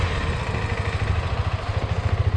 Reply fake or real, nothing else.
real